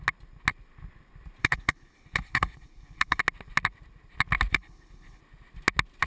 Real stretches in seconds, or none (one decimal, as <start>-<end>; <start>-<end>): 0.0-1.4; 3.2-4.5; 5.2-6.1